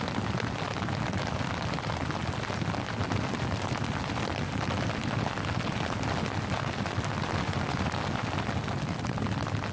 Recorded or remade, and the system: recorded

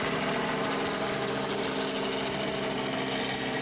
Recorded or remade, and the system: recorded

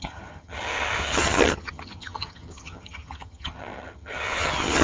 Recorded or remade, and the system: remade, vocoder, HiFi-GAN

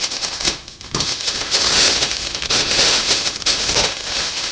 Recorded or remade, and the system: remade, autoencoder, DAC-VAE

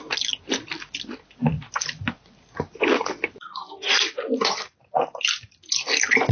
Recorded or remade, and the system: recorded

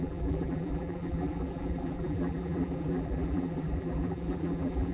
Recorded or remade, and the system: remade, vocoder, BigVGAN v2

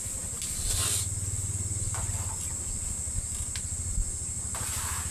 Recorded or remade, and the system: recorded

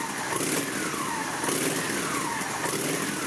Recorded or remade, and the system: recorded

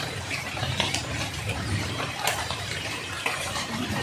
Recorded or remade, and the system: remade, vocoder, BigVGAN v2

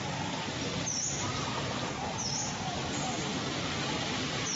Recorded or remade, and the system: remade, vocoder, BigVGAN v2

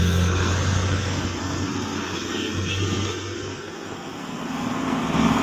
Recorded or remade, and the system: remade, codec, SNAC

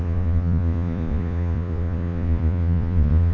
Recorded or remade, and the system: remade, vocoder, Vocos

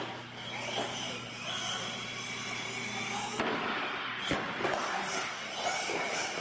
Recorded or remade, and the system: recorded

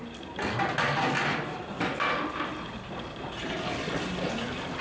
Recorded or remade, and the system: recorded